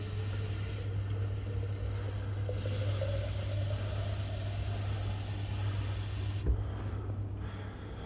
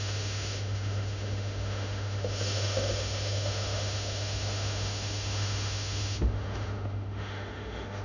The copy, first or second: second